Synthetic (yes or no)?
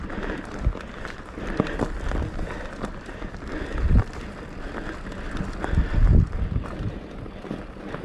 no